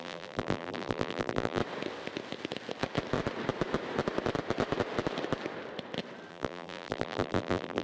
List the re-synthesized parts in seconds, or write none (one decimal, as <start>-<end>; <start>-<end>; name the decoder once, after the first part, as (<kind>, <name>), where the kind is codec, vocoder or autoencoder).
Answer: 0.0-1.6 (vocoder, BigVGAN v2); 6.3-7.8